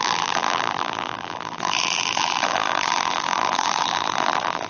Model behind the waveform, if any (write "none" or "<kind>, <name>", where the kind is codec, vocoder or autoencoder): vocoder, BigVGAN v2